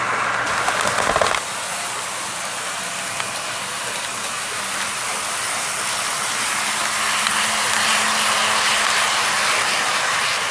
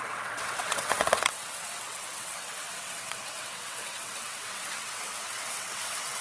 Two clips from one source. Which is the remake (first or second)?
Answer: second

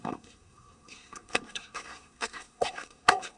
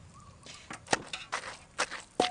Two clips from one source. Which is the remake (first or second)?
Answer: first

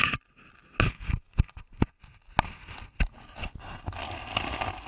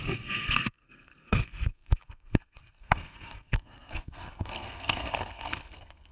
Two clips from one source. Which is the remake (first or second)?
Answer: second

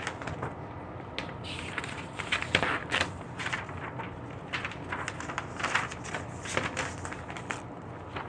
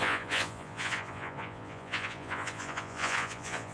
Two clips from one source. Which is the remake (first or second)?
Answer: second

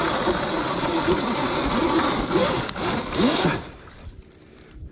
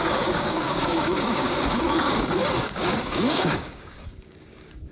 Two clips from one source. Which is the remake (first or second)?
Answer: second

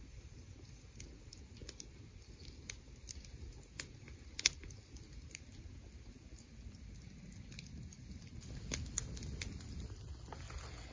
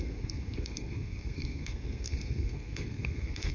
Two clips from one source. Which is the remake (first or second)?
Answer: second